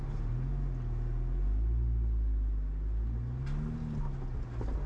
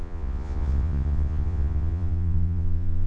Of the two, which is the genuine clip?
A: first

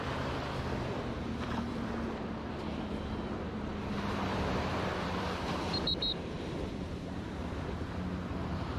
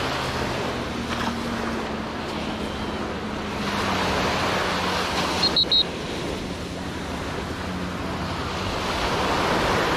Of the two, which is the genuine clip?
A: second